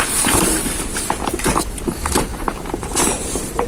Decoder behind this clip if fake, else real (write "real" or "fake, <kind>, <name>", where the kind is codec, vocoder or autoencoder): fake, vocoder, BigVGAN v2